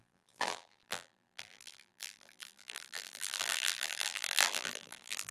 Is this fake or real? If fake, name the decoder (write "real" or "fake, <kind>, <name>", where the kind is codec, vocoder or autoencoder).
fake, vocoder, BigVGAN v2